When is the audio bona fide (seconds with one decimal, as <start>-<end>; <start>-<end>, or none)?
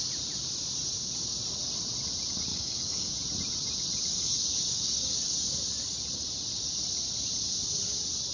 0.0-2.5; 3.1-4.1; 5.3-8.3